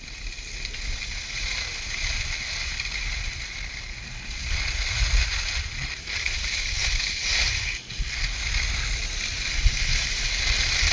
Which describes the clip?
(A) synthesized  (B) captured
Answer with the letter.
B